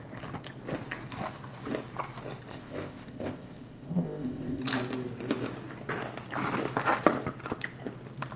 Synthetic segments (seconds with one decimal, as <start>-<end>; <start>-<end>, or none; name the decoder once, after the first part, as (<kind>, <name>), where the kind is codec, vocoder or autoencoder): 2.5-4.6 (codec, ZipCodec)